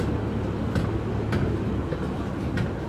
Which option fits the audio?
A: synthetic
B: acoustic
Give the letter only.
B